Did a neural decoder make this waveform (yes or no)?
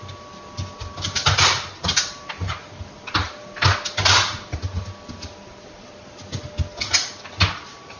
no